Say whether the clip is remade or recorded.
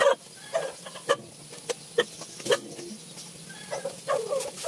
recorded